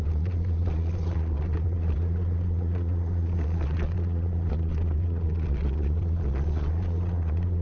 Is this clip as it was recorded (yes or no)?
no